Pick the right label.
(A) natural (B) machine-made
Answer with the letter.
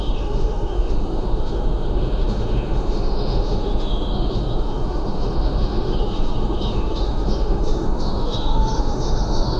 B